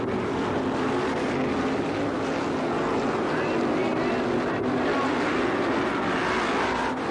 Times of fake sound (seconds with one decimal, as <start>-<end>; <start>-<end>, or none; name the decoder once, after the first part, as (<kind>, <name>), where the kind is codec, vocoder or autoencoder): none